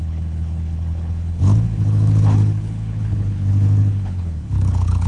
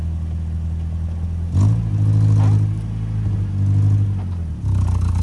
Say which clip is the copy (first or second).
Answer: first